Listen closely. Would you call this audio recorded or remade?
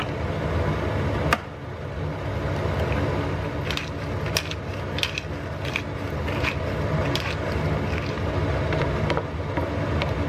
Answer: recorded